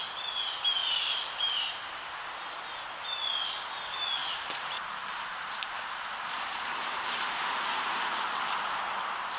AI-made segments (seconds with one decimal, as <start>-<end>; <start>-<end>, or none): 0.8-2.3; 4.2-8.8